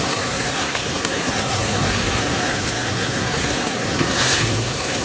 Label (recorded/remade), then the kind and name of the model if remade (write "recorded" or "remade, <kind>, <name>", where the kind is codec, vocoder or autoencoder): remade, codec, SNAC